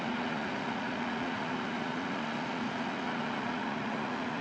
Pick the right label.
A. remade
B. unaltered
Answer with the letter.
A